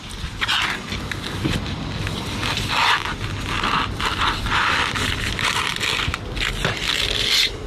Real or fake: real